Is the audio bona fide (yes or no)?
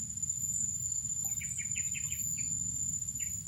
yes